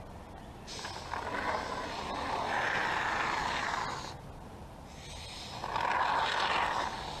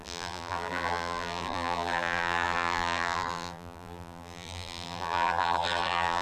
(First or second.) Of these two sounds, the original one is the first